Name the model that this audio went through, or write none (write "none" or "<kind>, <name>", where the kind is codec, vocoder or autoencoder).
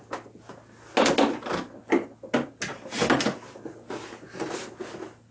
none